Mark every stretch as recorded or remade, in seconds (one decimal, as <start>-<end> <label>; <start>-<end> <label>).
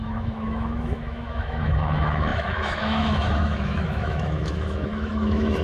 0.0-5.6 remade